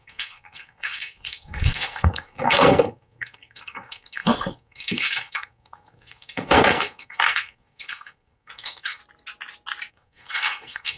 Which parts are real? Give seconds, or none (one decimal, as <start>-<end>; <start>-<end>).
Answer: 9.0-9.9